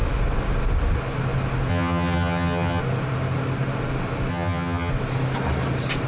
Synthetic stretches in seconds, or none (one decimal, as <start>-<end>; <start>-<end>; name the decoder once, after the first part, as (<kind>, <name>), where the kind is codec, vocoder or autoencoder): 1.7-2.8 (vocoder, HiFi-GAN); 4.3-4.9